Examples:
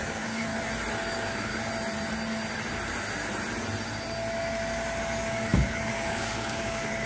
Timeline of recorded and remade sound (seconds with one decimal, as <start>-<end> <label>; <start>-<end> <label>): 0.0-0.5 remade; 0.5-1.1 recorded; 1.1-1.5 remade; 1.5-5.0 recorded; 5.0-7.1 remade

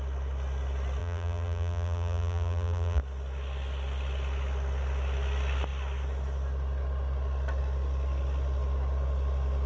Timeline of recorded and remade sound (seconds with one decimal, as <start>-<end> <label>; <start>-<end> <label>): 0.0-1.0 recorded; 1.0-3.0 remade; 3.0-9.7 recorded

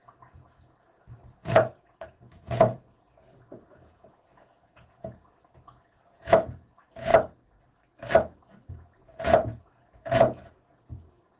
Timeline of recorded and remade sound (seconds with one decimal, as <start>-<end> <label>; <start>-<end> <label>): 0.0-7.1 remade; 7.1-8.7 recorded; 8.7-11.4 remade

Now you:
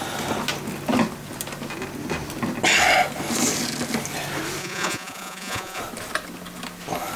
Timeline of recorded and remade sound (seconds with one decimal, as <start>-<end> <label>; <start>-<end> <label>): 0.0-4.6 recorded; 4.6-5.8 remade; 5.8-7.2 recorded

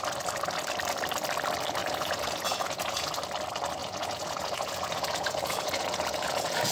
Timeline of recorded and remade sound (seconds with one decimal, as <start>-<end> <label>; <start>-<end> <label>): 0.0-1.8 recorded; 1.8-3.1 remade; 3.1-3.8 recorded; 3.8-6.7 remade

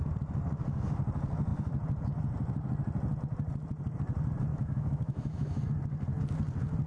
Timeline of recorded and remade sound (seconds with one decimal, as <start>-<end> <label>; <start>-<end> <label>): 0.0-4.5 recorded; 4.5-5.6 remade; 5.6-6.9 recorded

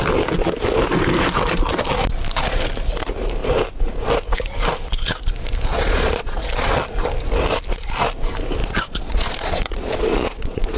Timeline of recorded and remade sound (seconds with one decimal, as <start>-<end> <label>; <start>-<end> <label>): 0.0-5.7 recorded; 5.7-6.7 remade; 6.7-8.6 recorded; 8.6-10.8 remade

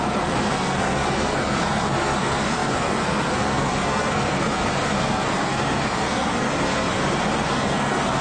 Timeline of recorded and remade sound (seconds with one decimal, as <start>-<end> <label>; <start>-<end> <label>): 0.0-7.0 remade; 7.0-7.5 recorded; 7.5-8.2 remade